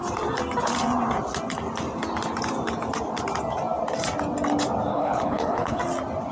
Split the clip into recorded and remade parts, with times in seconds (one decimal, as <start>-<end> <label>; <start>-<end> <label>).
0.0-4.9 recorded; 4.9-5.8 remade; 5.8-6.3 recorded